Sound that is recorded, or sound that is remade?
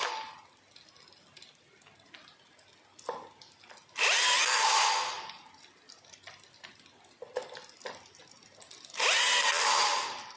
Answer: recorded